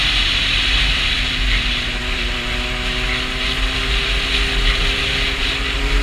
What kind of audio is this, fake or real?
real